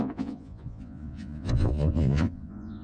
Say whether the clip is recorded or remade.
remade